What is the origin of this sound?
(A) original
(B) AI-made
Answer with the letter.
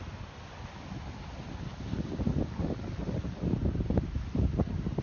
A